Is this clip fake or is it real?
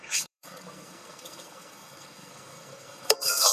fake